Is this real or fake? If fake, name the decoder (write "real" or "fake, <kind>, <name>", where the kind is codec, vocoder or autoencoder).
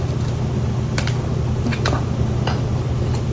real